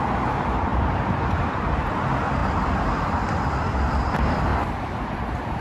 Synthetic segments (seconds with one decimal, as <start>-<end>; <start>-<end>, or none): 0.0-4.5